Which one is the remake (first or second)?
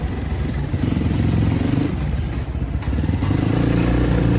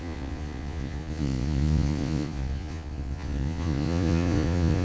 second